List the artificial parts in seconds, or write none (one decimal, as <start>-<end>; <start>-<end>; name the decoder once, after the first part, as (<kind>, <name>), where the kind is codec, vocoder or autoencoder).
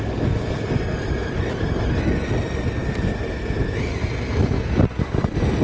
none